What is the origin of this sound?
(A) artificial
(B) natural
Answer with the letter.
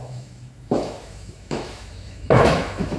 A